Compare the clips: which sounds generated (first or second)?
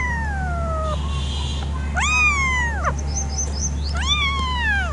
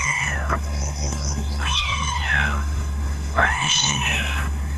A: second